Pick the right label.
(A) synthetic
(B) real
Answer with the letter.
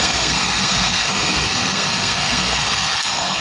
A